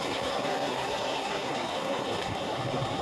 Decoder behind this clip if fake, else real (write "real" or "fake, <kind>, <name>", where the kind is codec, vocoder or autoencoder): fake, codec, SNAC